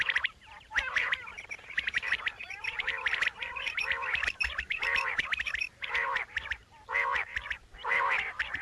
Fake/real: fake